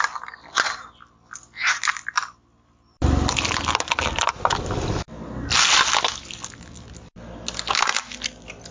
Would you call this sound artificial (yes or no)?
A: no